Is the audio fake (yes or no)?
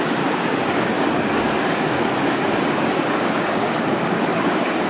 yes